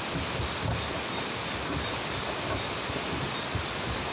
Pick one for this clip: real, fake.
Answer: real